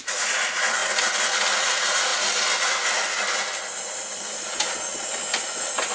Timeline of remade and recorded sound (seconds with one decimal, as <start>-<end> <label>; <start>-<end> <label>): 0.0-0.8 remade; 0.8-1.6 recorded; 1.6-2.1 remade; 2.1-5.9 recorded